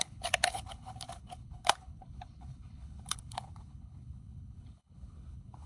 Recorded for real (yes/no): no